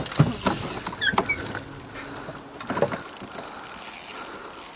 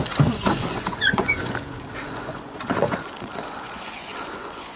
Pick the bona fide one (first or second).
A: first